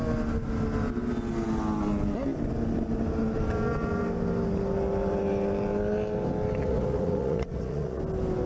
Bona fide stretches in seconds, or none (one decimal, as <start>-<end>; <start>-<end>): 0.0-6.6; 8.0-8.5